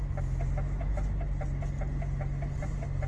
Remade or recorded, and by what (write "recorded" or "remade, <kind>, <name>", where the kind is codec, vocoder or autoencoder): recorded